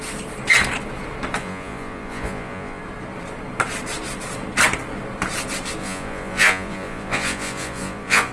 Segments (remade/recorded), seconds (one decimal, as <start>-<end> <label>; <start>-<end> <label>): 0.0-1.4 recorded; 1.4-2.8 remade; 2.8-5.8 recorded; 5.8-8.3 remade